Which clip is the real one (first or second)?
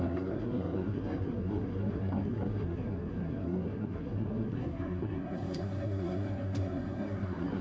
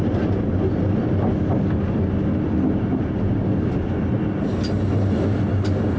second